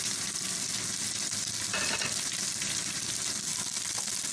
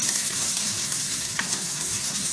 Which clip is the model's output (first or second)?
second